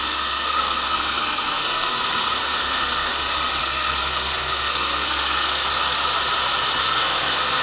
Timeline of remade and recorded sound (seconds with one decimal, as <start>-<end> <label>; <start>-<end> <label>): 0.0-3.1 remade; 3.1-3.6 recorded; 3.6-5.7 remade; 5.7-6.8 recorded; 6.8-7.6 remade